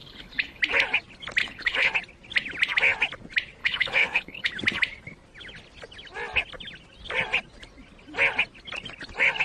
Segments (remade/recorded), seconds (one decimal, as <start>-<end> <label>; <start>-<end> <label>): 0.0-0.6 remade; 0.6-1.4 recorded; 1.4-1.9 remade; 1.9-3.6 recorded; 3.6-4.5 remade; 4.5-9.4 recorded